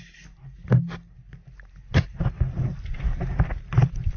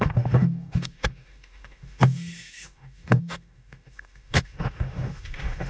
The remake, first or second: second